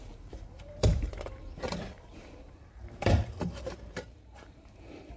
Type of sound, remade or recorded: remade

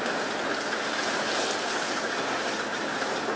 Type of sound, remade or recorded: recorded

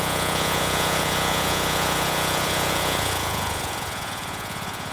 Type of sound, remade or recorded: remade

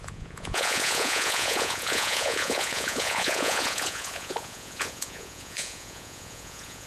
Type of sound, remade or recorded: remade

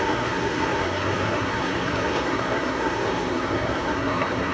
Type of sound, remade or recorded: remade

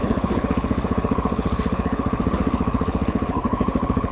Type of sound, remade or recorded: remade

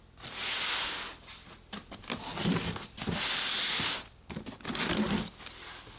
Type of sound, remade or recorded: recorded